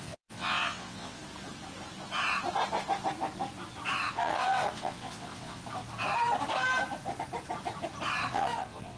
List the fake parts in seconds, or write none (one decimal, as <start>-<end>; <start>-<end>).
0.0-1.2; 4.1-5.6; 8.3-9.0